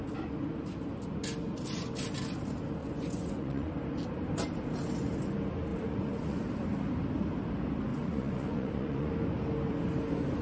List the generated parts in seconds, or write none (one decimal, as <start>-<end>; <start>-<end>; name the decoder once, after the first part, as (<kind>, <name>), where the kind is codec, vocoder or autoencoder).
2.8-3.7 (vocoder, Vocos); 5.7-6.4; 7.9-9.1